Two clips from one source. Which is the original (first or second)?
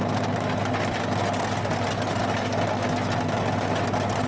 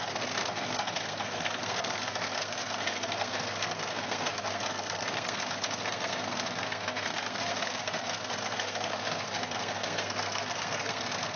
first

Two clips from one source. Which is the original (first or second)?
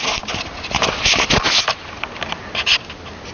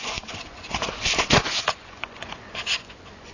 first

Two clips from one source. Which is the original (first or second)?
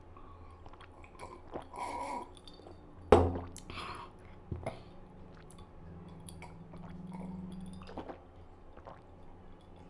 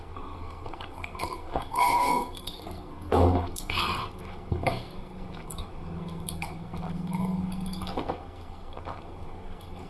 first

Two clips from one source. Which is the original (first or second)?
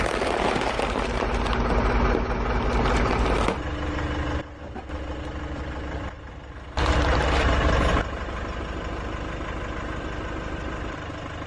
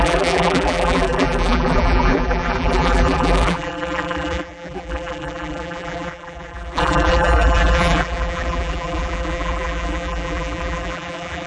first